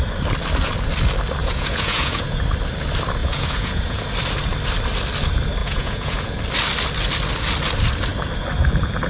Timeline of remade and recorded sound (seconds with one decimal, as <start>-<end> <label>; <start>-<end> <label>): 0.0-1.4 recorded; 1.4-2.4 remade; 2.4-3.2 recorded; 3.2-4.0 remade; 4.0-5.6 recorded; 5.6-6.4 remade; 6.4-9.1 recorded